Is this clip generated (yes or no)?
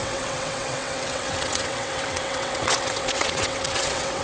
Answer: yes